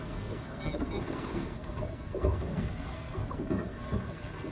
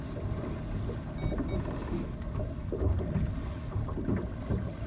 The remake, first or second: first